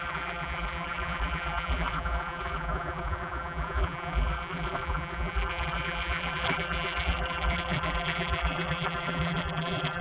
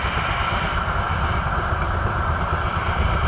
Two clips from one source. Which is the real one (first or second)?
second